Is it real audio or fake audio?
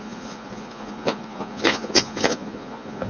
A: fake